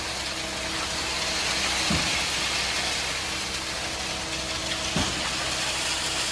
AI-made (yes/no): no